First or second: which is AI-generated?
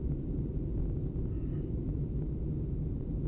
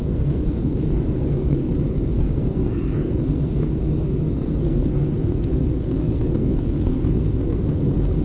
second